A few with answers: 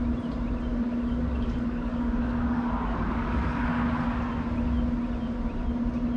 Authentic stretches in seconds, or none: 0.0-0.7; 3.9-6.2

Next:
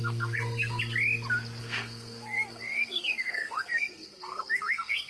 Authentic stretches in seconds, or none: 0.8-1.6

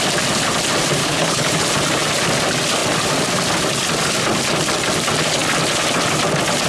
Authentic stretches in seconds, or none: 0.0-1.0; 1.5-6.7

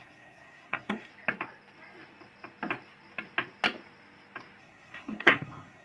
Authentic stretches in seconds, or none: 1.1-4.6

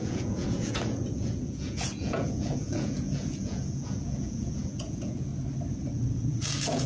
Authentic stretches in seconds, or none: 5.3-6.1

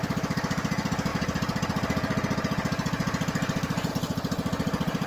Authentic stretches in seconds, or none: 1.1-3.9